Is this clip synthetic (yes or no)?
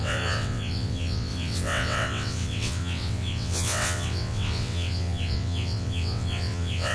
yes